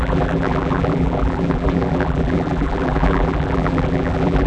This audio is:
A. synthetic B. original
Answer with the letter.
A